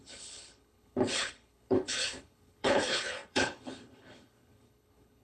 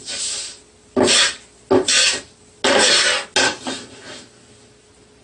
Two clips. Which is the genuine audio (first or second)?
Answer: second